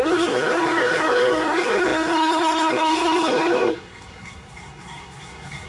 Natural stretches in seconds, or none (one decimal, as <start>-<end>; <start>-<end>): none